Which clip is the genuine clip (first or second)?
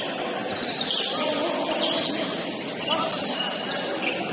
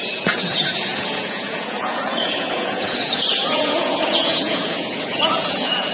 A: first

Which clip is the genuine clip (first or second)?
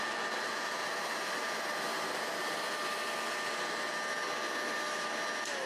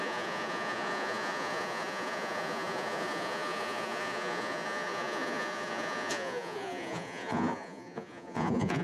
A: first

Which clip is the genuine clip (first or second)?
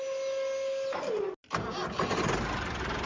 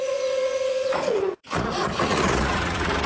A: first